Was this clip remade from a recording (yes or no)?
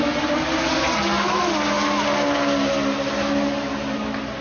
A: no